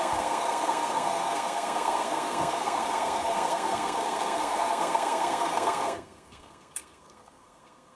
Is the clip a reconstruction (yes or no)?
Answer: yes